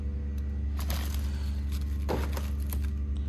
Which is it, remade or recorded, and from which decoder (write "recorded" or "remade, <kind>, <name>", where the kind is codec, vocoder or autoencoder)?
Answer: recorded